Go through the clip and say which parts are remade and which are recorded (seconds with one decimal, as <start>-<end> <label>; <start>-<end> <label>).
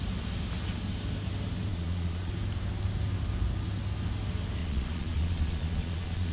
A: 0.0-1.7 recorded; 1.7-2.3 remade; 2.3-4.6 recorded; 4.6-6.3 remade